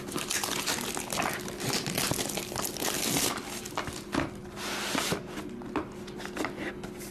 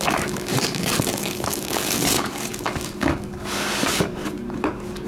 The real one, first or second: first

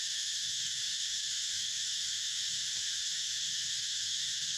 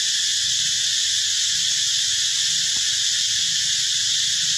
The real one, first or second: second